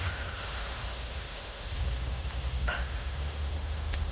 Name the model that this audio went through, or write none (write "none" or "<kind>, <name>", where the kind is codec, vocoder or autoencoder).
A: autoencoder, DAC-VAE